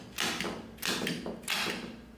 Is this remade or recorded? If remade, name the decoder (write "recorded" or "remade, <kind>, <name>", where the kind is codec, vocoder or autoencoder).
recorded